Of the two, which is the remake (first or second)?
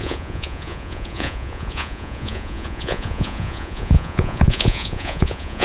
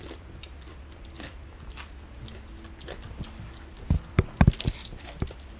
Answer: first